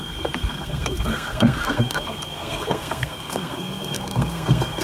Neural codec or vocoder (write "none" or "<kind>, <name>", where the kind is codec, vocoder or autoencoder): codec, SNAC